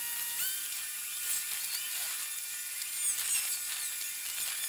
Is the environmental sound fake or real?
real